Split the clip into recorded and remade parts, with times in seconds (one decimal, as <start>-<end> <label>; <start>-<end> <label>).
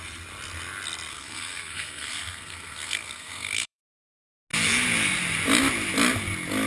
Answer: 0.0-1.1 recorded; 1.1-4.1 remade; 4.1-6.7 recorded